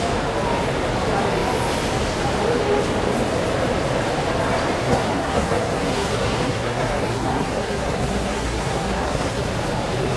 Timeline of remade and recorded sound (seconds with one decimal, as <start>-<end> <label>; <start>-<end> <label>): 0.0-4.8 recorded; 4.8-9.5 remade; 9.5-10.2 recorded